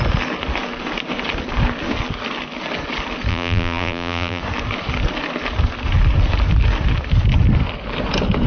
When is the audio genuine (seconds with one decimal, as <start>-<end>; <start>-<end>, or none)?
0.0-3.3; 4.4-8.5